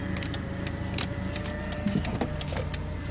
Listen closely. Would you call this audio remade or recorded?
recorded